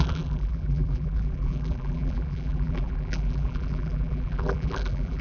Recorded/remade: remade